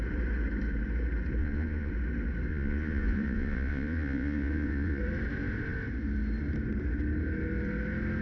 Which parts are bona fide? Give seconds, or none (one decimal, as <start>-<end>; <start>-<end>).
0.0-1.4; 1.9-2.5; 5.0-8.2